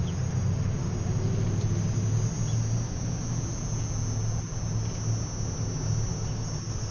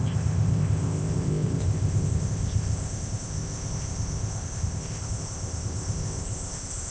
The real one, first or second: first